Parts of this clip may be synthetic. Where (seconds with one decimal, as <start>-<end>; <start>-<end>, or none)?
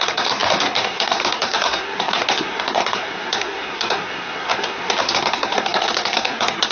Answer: 0.0-6.7